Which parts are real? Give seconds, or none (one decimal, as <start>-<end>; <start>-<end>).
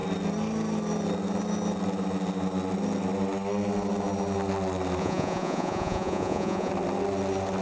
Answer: 0.0-5.0; 6.7-7.6